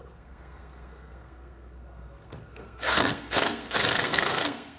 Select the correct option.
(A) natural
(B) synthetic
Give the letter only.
B